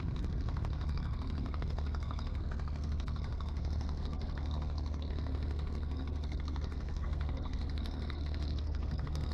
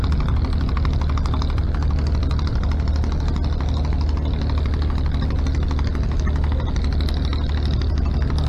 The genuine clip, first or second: second